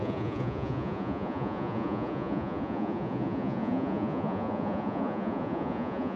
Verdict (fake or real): fake